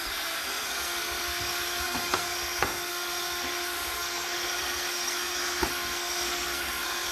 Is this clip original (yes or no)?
no